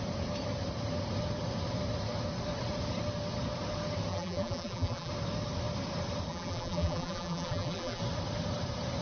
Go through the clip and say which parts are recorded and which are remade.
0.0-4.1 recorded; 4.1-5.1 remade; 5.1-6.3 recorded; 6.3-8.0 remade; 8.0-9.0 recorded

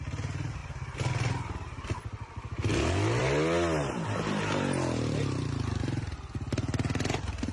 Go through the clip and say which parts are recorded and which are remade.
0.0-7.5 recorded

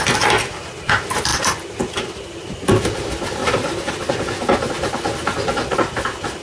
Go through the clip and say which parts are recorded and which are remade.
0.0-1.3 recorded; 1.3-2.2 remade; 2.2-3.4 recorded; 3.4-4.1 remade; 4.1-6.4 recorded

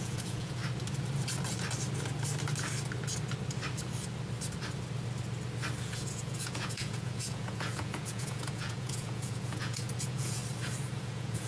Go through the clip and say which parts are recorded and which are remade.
0.0-0.6 remade; 0.6-5.8 recorded; 5.8-10.4 remade; 10.4-11.0 recorded; 11.0-11.5 remade